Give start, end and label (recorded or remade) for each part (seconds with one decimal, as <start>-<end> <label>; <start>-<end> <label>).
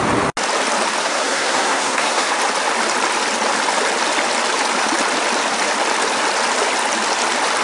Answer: 0.0-1.0 recorded; 1.0-2.3 remade; 2.3-7.6 recorded